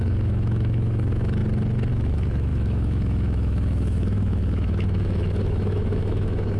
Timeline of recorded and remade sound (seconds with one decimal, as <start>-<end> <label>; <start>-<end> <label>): 0.0-1.4 remade; 1.4-1.9 recorded; 1.9-6.6 remade

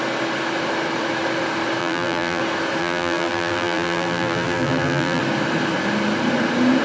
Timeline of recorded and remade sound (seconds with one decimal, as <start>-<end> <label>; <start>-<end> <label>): 0.0-1.8 recorded; 1.8-2.4 remade; 2.4-2.8 recorded; 2.8-5.2 remade; 5.2-6.8 recorded

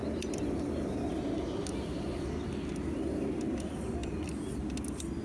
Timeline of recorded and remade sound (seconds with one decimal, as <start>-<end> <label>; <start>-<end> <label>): 0.0-5.2 recorded

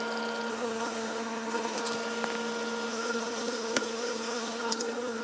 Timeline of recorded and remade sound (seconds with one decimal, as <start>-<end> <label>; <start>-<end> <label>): 0.0-0.5 recorded; 0.5-1.8 remade; 1.8-2.9 recorded; 2.9-5.2 remade

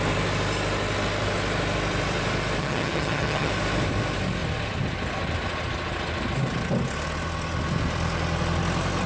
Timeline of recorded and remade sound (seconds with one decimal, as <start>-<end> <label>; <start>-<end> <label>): 0.0-2.6 recorded; 2.6-3.5 remade; 3.5-9.1 recorded